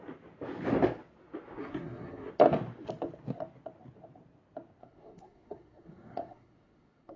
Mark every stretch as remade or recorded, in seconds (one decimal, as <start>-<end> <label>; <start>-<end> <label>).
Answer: 0.0-1.6 recorded; 1.6-2.3 remade; 2.3-4.8 recorded; 4.8-7.2 remade